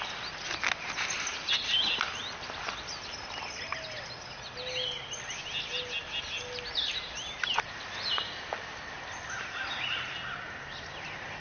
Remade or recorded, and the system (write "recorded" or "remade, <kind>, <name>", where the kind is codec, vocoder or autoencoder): recorded